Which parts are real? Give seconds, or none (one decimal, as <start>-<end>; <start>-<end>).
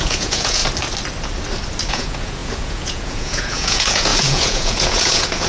0.6-1.9